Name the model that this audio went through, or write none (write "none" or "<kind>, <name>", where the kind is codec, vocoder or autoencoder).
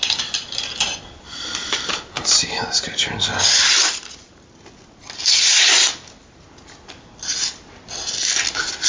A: none